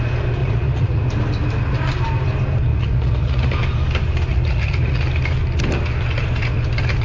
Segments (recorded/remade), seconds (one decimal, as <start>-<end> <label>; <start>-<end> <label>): 0.0-0.4 recorded; 0.4-1.0 remade; 1.0-2.7 recorded; 2.7-3.5 remade; 3.5-4.3 recorded; 4.3-5.0 remade; 5.0-7.0 recorded